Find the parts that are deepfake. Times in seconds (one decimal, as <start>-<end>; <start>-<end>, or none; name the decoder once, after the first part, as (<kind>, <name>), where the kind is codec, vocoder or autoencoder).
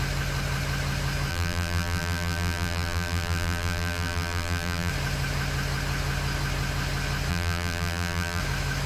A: 1.3-4.9 (vocoder, BigVGAN v2); 7.3-8.4